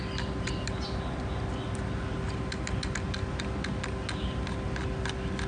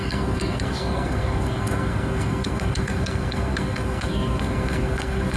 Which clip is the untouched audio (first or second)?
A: first